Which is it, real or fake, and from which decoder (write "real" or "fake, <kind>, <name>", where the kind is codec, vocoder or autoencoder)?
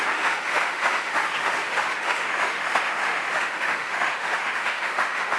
fake, autoencoder, DAC-VAE